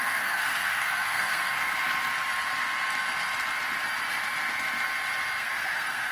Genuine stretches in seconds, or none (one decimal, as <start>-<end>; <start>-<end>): 1.7-5.4